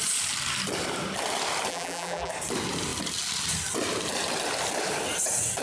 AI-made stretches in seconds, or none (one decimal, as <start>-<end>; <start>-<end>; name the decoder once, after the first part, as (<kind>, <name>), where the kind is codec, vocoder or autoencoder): 1.7-2.3 (vocoder, BigVGAN v2)